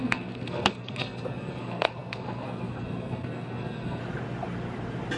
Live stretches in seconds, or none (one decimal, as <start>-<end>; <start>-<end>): 4.0-5.2